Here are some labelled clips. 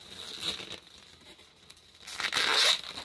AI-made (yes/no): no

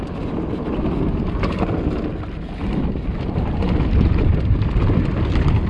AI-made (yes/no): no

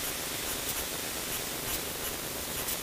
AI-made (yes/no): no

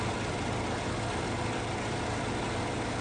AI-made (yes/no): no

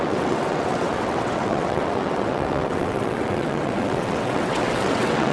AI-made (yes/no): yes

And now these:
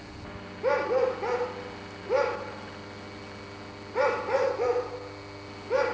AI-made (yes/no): no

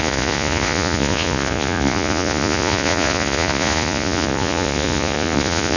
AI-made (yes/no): yes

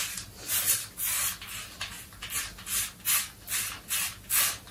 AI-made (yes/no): no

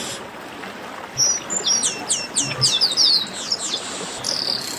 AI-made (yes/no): no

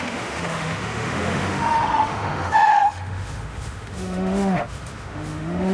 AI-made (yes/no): yes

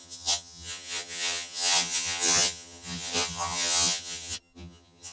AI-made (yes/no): yes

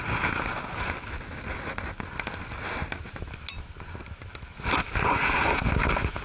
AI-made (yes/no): no